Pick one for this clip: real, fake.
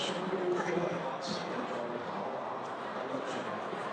real